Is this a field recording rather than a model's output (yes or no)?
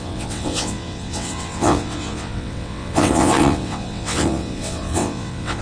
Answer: no